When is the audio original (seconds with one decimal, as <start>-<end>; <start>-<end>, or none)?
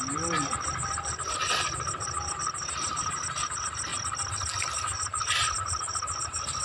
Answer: 3.9-4.7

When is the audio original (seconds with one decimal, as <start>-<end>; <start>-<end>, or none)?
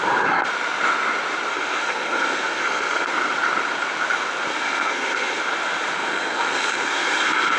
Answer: 0.0-1.5; 3.1-4.5; 5.4-6.0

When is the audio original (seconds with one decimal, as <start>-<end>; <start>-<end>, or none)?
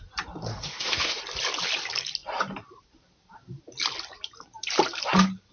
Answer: 0.0-0.5; 1.2-5.5